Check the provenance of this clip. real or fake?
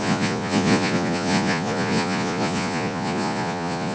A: fake